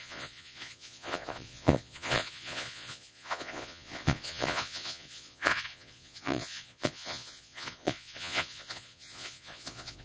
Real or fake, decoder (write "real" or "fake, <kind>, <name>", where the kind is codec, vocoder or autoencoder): fake, vocoder, Vocos